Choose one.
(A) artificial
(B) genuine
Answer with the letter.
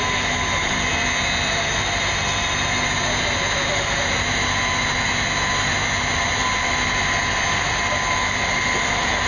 B